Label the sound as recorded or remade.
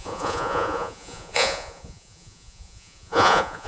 remade